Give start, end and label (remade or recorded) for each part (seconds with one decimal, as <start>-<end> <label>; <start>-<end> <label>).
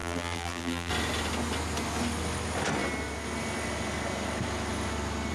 0.0-0.9 remade; 0.9-5.3 recorded